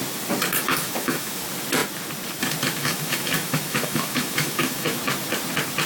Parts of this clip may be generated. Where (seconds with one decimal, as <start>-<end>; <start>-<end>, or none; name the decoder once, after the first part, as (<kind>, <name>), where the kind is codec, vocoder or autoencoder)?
0.7-1.4 (autoencoder, DAC-VAE); 2.8-5.0